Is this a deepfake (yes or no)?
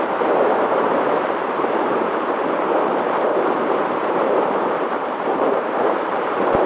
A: yes